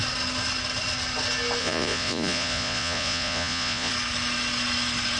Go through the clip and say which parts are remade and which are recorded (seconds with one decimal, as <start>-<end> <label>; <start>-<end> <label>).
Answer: 0.0-1.6 recorded; 1.6-3.9 remade; 3.9-5.2 recorded